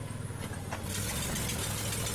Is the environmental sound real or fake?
real